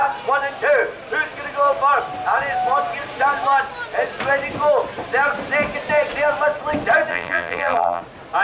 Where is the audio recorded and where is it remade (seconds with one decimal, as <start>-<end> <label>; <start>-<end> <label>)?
0.0-7.1 recorded; 7.1-8.0 remade; 8.0-8.4 recorded